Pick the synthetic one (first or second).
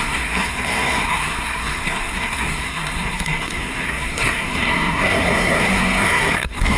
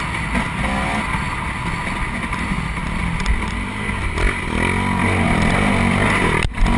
first